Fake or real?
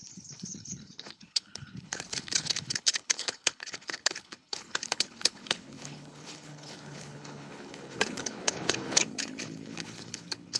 fake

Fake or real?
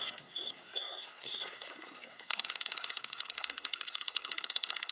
fake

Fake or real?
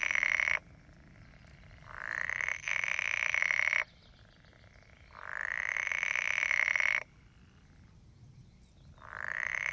real